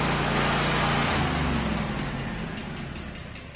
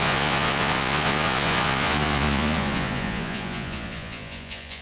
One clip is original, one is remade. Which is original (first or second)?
first